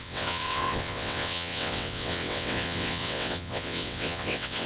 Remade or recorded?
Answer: remade